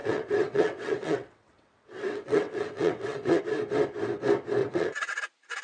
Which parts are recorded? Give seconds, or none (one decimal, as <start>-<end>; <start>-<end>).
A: 3.4-4.6; 5.1-5.6